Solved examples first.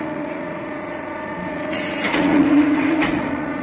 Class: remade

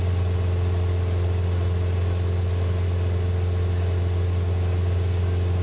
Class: recorded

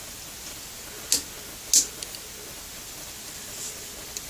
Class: recorded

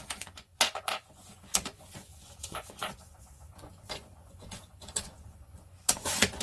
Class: remade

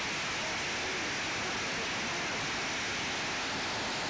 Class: recorded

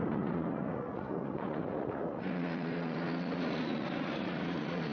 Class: remade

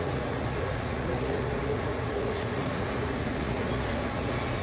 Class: remade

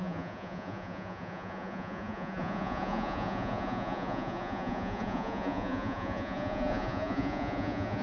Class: remade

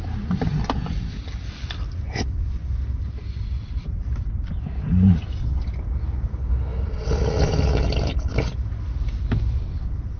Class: recorded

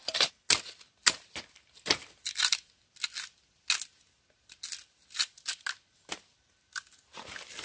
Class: recorded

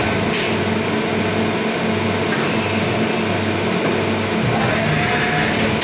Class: recorded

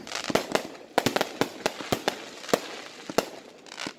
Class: recorded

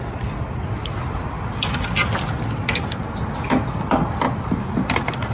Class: recorded